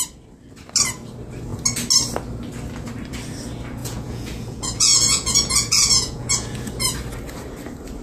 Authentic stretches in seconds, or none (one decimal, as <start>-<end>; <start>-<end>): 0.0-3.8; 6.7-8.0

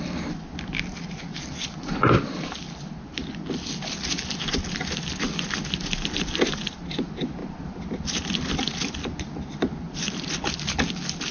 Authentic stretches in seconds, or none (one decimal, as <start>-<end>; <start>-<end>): 0.0-11.3

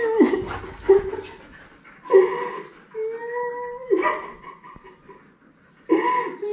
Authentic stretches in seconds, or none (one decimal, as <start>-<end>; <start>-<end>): 0.0-6.5